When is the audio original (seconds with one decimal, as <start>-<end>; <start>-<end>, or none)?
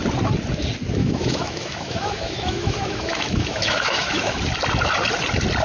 0.0-1.0; 4.4-5.6